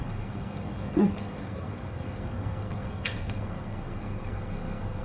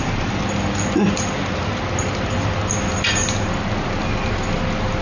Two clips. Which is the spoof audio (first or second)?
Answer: first